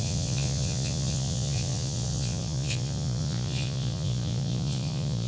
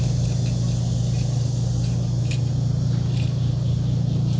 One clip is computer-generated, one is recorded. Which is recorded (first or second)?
second